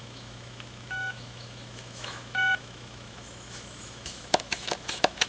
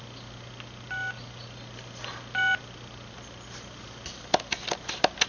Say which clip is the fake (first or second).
first